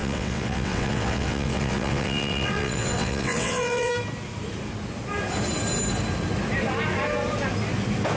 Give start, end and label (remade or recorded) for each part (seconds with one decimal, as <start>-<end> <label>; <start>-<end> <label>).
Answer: 0.0-3.9 remade; 3.9-8.2 recorded